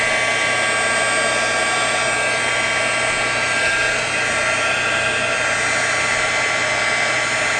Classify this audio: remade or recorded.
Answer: recorded